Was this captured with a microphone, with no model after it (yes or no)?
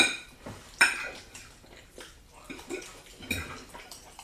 no